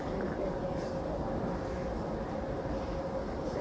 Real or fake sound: real